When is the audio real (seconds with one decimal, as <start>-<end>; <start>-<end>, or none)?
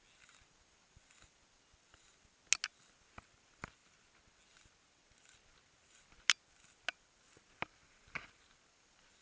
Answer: 0.0-9.2